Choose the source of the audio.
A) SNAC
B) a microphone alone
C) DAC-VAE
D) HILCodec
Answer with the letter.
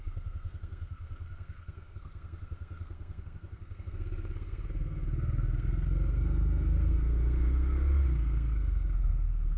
A